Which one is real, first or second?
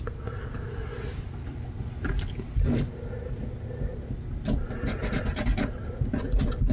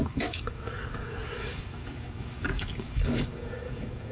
first